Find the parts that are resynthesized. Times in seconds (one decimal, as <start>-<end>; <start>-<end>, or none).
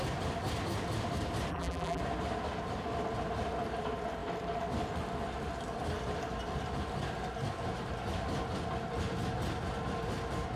1.5-2.0